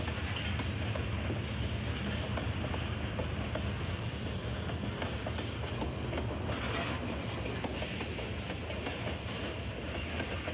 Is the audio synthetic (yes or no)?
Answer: no